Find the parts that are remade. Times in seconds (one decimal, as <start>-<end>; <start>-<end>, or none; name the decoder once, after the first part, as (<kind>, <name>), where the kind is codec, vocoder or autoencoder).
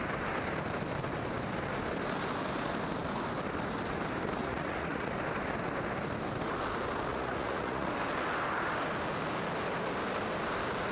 4.4-5.1 (vocoder, Vocos); 7.1-7.9